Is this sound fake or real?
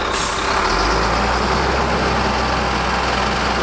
real